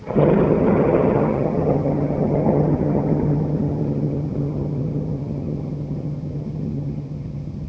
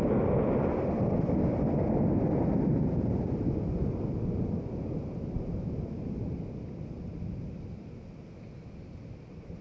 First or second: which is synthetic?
first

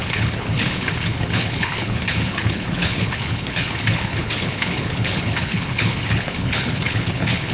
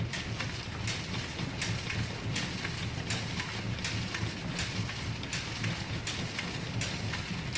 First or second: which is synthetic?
first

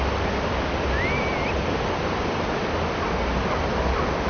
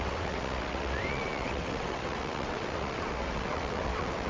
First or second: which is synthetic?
second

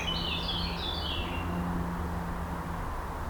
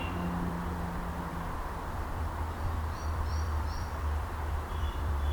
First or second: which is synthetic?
second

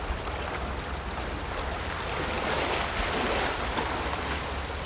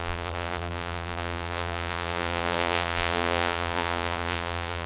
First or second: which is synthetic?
second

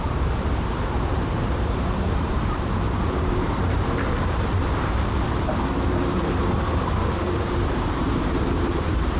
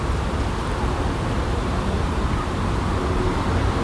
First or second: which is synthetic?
first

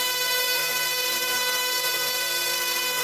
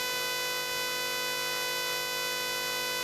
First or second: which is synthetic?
first